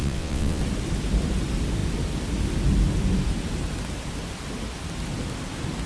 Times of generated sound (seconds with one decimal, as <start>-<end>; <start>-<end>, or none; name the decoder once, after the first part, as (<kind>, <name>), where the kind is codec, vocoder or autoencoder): 0.0-0.6 (vocoder, WaveNeXt)

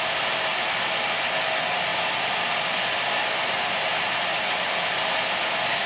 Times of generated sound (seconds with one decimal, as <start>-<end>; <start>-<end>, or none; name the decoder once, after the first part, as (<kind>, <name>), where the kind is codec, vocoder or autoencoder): none

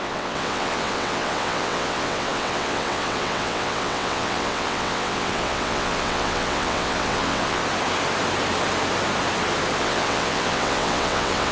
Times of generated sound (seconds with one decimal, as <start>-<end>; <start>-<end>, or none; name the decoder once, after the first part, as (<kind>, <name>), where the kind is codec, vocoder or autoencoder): 0.0-7.6 (vocoder, WaveNeXt); 9.8-11.5

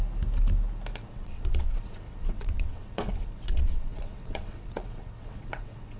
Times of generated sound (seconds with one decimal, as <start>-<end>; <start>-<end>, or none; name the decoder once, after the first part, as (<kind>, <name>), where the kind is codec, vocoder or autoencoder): 1.1-6.0 (vocoder, WaveNeXt)

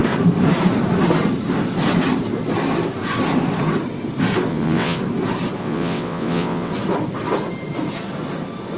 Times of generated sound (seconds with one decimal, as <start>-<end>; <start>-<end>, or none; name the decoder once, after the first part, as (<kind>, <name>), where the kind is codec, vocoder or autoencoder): 4.5-5.0 (vocoder, WaveNeXt); 5.6-6.7